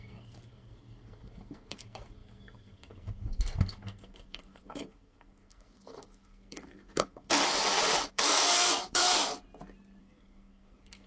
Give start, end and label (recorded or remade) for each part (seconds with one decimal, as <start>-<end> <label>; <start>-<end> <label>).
0.0-7.4 remade; 7.4-8.1 recorded; 8.1-9.0 remade; 9.0-10.0 recorded; 10.0-11.1 remade

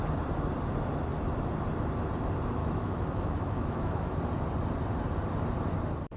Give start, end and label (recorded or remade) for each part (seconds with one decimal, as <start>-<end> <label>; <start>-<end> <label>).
0.0-2.6 recorded; 2.6-4.2 remade; 4.2-6.2 recorded